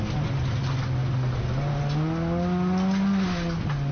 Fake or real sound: real